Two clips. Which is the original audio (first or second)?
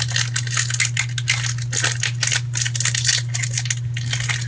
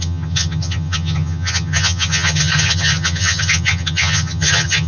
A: first